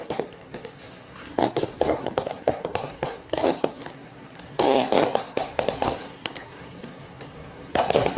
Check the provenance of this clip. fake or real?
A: fake